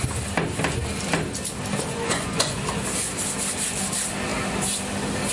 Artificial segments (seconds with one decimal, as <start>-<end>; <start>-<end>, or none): 1.9-2.6